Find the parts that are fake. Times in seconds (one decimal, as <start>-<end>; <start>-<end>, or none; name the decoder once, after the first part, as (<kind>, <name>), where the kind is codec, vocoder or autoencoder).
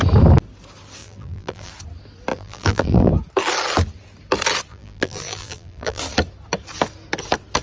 1.0-1.7 (vocoder, BigVGAN v2); 2.3-3.1; 4.7-6.0